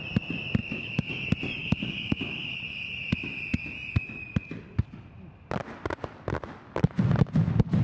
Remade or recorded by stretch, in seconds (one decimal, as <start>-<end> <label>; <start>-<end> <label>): 0.0-0.6 recorded; 0.6-1.1 remade; 1.1-1.6 recorded; 1.6-2.5 remade; 2.5-7.8 recorded